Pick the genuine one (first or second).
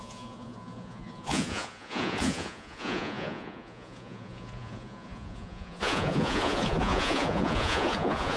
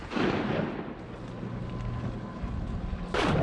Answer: second